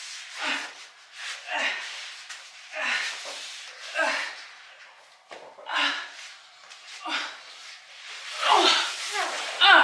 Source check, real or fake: real